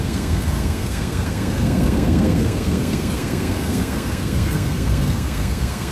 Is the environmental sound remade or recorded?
remade